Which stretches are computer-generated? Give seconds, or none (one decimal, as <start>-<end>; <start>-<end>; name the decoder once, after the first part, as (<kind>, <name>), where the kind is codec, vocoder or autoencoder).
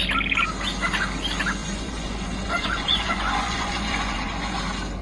1.6-4.6 (vocoder, Vocos)